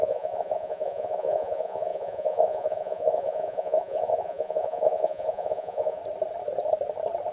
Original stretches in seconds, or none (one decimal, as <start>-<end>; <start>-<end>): 6.0-7.3